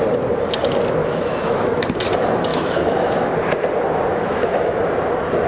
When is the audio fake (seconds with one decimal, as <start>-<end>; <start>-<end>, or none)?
1.0-1.7; 2.5-3.3; 4.1-4.7